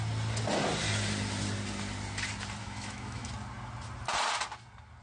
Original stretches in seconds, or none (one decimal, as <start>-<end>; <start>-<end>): 0.0-2.6; 3.3-5.0